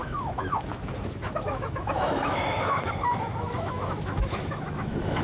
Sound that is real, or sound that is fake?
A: fake